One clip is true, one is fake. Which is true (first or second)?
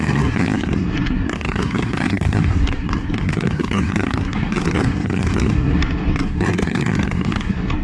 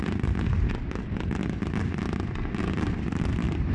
second